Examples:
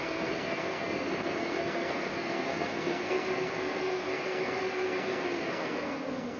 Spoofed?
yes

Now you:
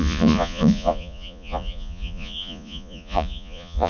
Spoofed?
yes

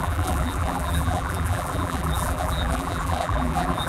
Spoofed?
yes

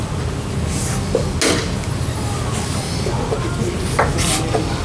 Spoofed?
no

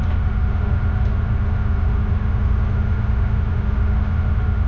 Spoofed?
yes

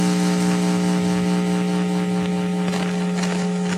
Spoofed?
no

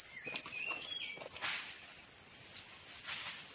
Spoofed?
no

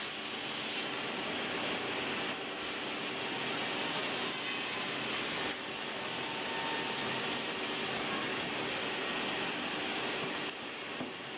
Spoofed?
no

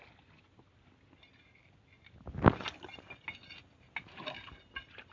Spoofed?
no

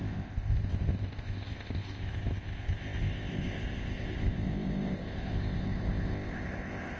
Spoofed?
yes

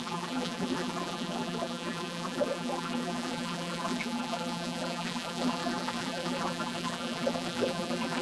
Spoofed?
yes